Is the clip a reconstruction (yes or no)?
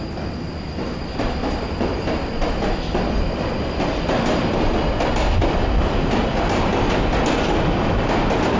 no